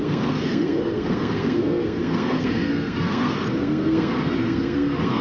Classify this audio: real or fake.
fake